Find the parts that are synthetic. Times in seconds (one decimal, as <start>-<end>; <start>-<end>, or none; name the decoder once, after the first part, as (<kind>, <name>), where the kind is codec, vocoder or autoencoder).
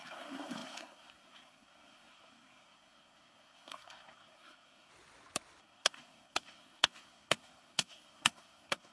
0.0-4.9 (codec, SNAC); 5.6-8.9